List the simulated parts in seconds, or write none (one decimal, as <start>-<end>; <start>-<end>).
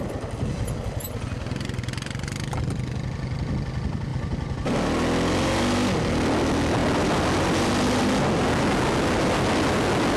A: none